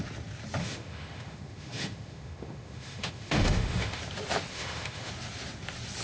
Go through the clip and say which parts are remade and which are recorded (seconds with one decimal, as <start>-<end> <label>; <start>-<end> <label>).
0.0-0.6 recorded; 0.6-4.0 remade; 4.0-4.5 recorded; 4.5-5.1 remade; 5.1-6.0 recorded